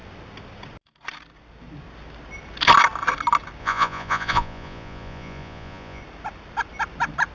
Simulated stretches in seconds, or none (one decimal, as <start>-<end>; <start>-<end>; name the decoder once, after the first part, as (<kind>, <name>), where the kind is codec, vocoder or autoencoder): 3.6-6.0 (vocoder, Vocos)

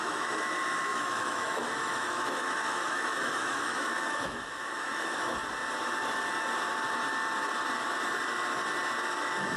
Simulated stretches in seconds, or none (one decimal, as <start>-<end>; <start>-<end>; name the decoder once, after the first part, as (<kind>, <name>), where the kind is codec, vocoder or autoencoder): 0.0-5.4 (autoencoder, DAC-VAE); 9.2-9.6

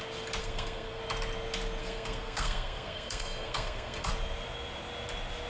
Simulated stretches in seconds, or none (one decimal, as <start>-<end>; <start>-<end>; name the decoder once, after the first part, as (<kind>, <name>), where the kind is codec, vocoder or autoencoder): 0.4-1.0 (codec, SNAC); 1.8-4.1

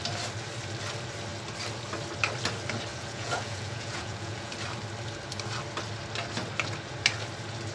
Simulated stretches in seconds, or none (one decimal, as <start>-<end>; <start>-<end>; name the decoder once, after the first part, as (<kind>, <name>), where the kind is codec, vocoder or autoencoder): 2.9-4.5 (vocoder, Vocos)

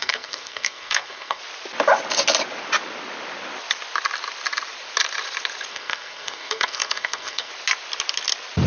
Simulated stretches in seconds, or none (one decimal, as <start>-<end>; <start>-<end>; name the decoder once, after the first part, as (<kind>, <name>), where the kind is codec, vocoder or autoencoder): 0.0-1.4 (codec, SNAC); 5.7-7.5

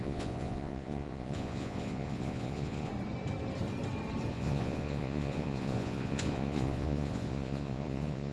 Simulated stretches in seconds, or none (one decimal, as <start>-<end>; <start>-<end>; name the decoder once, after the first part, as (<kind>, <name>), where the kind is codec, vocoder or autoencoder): 0.0-2.9 (vocoder, Vocos); 4.3-8.3

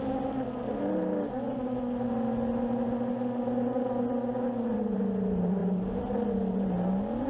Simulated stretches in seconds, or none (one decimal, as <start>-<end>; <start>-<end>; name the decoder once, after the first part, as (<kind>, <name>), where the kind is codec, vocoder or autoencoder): none